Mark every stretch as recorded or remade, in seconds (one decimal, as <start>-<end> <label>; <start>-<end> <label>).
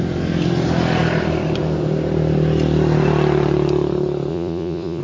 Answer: 0.0-4.3 recorded; 4.3-5.0 remade